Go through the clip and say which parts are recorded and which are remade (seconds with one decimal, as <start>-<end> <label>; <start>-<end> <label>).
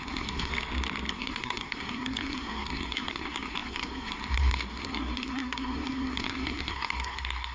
0.0-0.5 remade; 0.5-1.1 recorded; 1.1-7.5 remade